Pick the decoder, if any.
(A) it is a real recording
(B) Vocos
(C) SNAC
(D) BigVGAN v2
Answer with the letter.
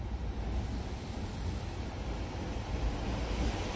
A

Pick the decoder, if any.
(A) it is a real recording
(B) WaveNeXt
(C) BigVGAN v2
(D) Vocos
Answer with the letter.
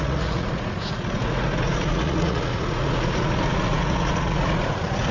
D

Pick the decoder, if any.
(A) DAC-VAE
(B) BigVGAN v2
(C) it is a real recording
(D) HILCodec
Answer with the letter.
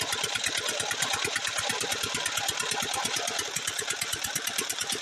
B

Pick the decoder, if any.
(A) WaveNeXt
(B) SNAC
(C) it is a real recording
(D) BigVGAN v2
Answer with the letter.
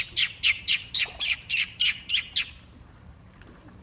D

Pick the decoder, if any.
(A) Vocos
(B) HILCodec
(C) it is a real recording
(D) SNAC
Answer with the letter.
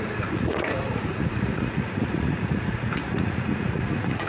A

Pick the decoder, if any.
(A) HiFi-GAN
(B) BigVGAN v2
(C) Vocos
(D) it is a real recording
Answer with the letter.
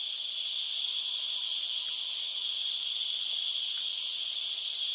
D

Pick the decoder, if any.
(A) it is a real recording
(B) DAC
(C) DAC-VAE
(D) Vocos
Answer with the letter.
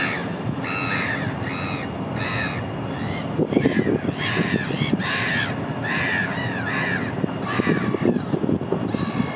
A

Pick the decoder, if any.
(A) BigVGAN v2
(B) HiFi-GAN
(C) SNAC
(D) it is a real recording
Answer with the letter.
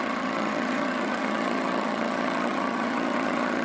B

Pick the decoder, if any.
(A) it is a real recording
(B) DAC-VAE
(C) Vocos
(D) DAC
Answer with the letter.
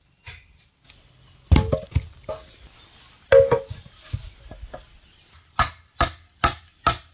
A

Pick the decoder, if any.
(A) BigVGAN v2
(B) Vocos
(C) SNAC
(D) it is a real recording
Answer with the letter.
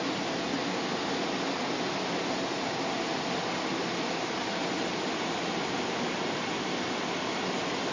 D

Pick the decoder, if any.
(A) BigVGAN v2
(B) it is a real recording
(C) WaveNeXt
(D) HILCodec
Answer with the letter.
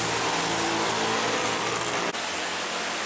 B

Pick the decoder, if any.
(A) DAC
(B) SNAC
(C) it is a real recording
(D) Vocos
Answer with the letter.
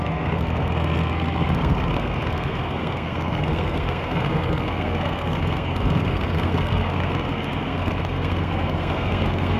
B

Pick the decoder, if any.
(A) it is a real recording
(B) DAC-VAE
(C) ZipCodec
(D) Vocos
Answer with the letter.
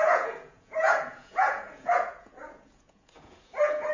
D